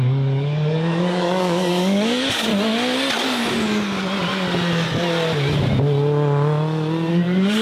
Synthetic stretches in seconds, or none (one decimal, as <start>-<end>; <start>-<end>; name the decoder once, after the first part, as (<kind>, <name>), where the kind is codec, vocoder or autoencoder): 0.0-2.5 (codec, DAC); 7.1-7.6